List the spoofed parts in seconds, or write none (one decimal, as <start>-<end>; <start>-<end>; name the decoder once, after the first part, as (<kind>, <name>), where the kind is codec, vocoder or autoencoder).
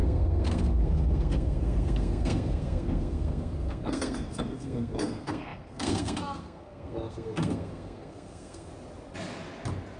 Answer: 0.0-8.7 (codec, SNAC)